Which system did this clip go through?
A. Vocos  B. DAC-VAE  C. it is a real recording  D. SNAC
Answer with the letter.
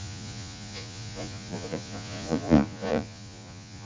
A